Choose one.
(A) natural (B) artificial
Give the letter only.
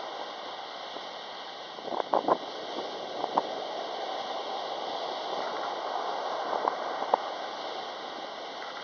A